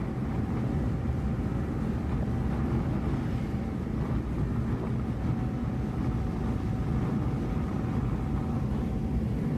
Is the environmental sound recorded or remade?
recorded